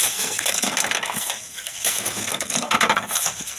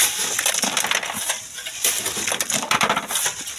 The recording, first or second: second